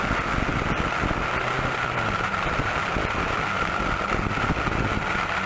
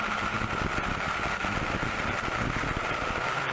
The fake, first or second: second